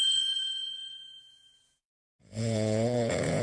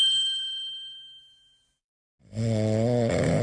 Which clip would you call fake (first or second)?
first